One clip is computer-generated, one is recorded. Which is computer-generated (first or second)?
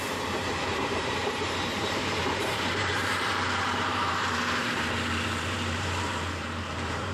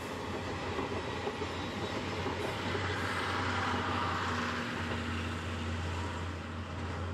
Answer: first